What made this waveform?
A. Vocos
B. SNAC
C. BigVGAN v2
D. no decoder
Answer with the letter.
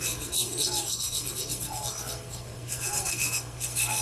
B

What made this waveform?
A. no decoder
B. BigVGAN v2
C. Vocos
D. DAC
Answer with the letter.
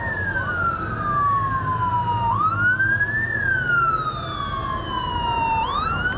A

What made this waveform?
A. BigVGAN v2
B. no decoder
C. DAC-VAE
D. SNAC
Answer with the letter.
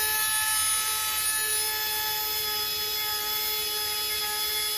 B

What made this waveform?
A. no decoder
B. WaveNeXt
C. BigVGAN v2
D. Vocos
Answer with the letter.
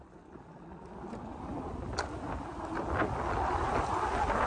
A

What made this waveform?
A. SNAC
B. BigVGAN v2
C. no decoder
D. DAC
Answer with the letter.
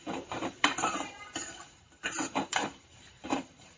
B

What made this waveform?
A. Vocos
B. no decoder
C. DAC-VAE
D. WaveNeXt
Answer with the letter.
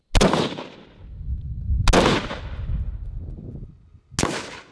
B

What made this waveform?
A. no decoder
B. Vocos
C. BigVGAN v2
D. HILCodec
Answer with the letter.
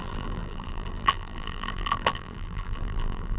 C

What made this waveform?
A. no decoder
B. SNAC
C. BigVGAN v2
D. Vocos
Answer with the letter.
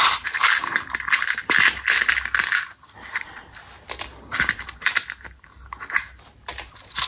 A